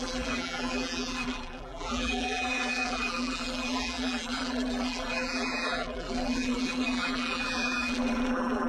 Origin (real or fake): fake